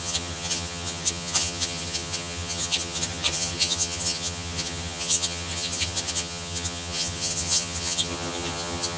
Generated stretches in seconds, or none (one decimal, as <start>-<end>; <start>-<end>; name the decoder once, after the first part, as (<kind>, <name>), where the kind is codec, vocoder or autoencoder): 0.0-9.0 (vocoder, HiFi-GAN)

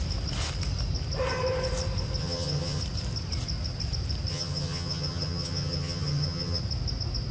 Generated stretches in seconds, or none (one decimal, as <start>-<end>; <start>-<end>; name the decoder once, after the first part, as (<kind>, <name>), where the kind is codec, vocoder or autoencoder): 2.2-2.8 (vocoder, HiFi-GAN); 4.3-6.6

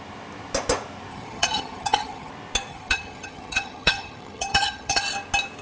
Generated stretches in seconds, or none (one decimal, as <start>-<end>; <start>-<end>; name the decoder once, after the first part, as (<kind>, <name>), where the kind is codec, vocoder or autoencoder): 1.1-2.3 (vocoder, HiFi-GAN); 2.7-5.0

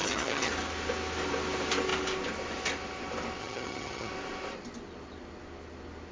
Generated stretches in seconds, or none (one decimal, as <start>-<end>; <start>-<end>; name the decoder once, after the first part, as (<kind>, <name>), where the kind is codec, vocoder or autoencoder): 0.0-0.5 (vocoder, HiFi-GAN); 3.4-4.1

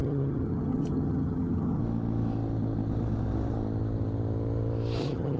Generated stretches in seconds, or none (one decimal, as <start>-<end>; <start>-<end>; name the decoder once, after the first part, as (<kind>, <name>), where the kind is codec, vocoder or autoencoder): 0.0-1.8 (vocoder, HiFi-GAN); 5.0-5.4

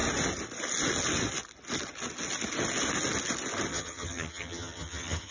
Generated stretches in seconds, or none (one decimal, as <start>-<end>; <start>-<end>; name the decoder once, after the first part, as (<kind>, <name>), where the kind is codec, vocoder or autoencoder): 3.7-5.3 (vocoder, HiFi-GAN)

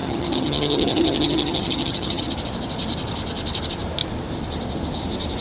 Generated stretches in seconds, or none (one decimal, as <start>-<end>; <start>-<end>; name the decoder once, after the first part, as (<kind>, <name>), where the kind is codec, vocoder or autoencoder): 0.0-2.2 (vocoder, HiFi-GAN)